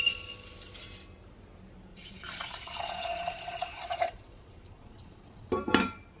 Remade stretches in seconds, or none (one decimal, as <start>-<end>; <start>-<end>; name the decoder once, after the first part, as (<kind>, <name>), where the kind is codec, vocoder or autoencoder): 1.9-5.5 (vocoder, Vocos)